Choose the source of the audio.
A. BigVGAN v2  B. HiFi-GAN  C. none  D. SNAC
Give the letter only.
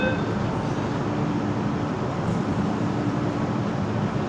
A